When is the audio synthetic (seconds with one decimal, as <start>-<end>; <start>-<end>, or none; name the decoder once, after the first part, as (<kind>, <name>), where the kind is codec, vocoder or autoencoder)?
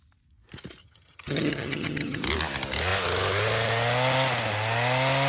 0.8-2.2 (vocoder, HiFi-GAN)